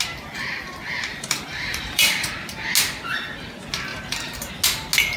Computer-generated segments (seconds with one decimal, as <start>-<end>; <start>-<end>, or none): 1.1-2.3; 3.9-4.5